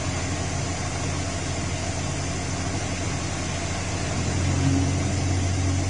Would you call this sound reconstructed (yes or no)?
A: no